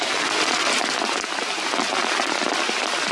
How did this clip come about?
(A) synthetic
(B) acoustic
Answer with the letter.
B